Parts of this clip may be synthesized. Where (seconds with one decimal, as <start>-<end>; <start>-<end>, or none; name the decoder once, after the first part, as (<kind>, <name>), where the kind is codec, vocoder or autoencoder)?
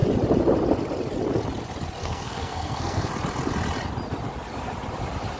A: 2.0-3.1 (codec, SNAC)